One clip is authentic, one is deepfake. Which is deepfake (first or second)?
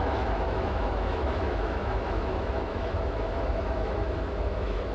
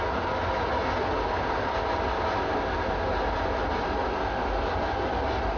first